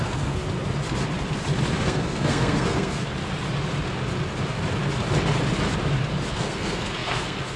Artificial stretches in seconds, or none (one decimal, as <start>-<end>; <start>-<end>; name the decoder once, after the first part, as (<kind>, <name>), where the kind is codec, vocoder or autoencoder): 0.0-0.4 (codec, SNAC); 1.7-3.0; 6.3-7.6